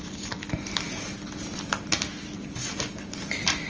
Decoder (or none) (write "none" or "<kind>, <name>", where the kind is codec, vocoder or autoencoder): none